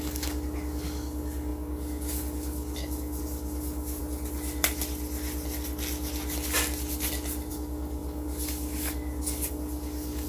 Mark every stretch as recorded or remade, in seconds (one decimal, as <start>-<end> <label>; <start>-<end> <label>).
0.0-4.0 remade; 4.0-7.5 recorded; 7.5-10.3 remade